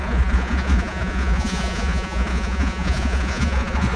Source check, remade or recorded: remade